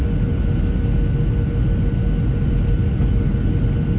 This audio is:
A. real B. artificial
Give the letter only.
A